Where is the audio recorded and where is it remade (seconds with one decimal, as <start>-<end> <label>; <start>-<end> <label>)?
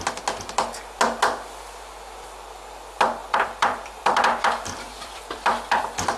0.0-3.2 recorded; 3.2-5.8 remade; 5.8-6.2 recorded